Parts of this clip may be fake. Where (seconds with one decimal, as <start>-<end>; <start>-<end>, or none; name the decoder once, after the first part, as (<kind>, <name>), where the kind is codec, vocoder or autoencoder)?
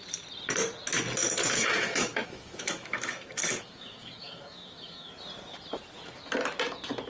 1.4-5.1 (autoencoder, DAC-VAE)